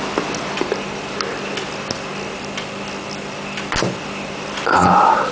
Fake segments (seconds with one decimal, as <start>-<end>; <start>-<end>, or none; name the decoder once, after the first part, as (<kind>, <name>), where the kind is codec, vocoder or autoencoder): none